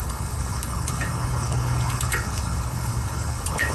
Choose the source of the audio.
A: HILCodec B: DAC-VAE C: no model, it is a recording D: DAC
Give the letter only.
A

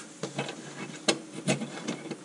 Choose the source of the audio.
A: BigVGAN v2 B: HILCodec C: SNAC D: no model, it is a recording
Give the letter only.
D